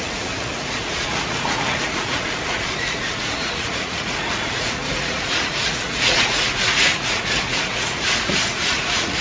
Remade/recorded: remade